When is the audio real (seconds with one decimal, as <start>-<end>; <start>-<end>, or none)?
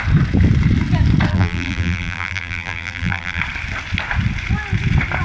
0.0-1.3; 3.4-5.2